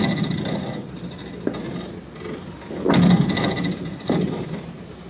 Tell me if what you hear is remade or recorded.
recorded